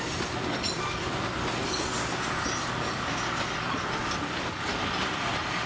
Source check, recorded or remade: recorded